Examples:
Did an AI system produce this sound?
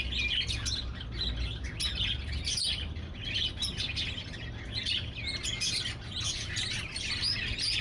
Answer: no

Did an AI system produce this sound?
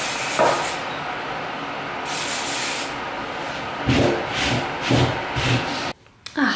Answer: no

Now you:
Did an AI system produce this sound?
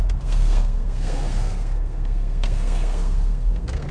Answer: yes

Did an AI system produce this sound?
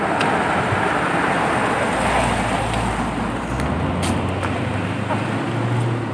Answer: no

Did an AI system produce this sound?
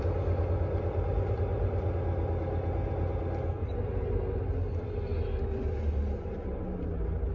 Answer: no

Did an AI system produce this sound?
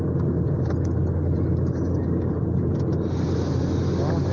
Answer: no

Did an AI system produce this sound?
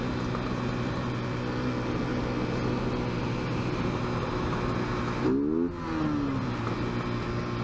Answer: no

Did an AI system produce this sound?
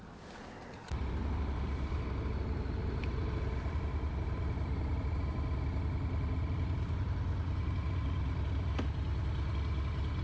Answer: no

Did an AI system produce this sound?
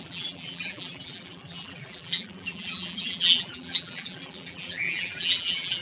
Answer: yes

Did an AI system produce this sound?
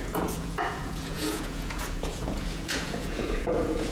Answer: yes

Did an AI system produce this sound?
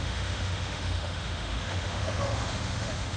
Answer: yes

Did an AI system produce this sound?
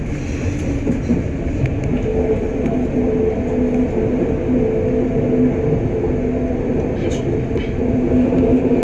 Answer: no